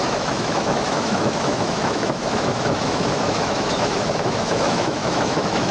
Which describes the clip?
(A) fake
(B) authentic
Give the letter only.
A